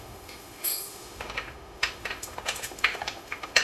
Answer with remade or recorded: remade